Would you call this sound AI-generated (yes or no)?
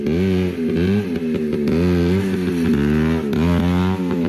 no